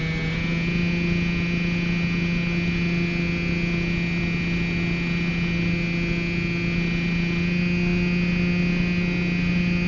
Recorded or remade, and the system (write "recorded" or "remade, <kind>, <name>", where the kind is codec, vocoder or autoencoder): recorded